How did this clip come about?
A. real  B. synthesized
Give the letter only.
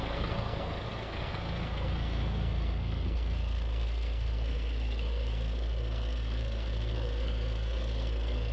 B